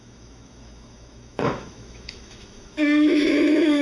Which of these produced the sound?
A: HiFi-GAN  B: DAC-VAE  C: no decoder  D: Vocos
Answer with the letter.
B